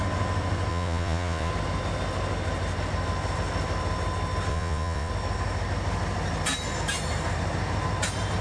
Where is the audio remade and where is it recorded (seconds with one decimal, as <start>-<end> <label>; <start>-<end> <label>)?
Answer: 0.0-0.7 recorded; 0.7-1.5 remade; 1.5-4.5 recorded; 4.5-5.1 remade; 5.1-8.4 recorded